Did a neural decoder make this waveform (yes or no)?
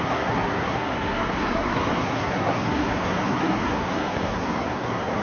yes